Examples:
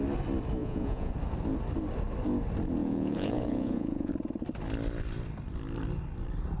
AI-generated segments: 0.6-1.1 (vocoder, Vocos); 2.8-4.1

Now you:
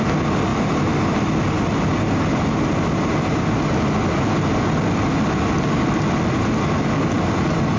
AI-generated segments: none

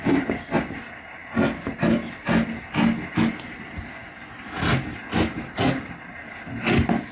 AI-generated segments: none

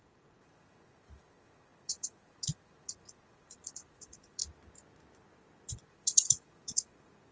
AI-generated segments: 0.0-4.4 (vocoder, Vocos); 5.7-7.3

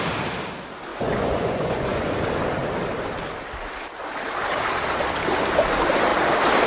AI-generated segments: 0.9-2.2 (vocoder, Vocos)